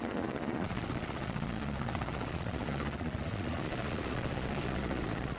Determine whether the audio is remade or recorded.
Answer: remade